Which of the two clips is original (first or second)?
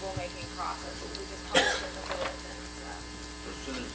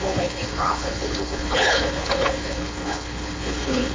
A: first